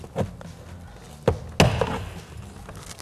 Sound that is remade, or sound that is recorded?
recorded